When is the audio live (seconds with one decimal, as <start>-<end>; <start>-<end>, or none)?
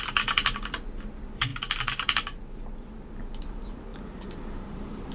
0.0-5.1